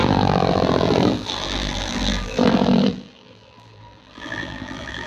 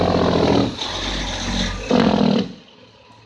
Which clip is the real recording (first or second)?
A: second